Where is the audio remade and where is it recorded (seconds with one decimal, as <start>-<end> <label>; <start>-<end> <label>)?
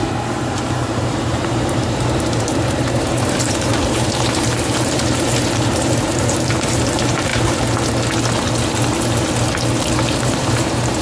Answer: 0.0-7.3 remade; 7.3-10.2 recorded; 10.2-11.0 remade